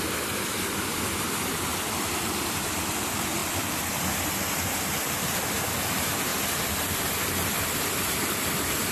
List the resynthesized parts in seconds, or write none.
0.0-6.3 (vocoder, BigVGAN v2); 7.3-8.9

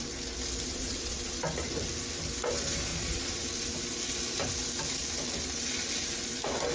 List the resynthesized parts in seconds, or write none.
0.7-1.4 (vocoder, Vocos); 2.9-3.4

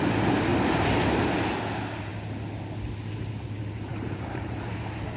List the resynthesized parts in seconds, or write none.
3.9-4.7 (vocoder, BigVGAN v2)

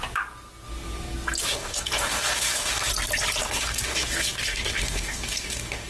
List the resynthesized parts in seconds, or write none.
1.4-2.9 (codec, DAC); 3.4-5.9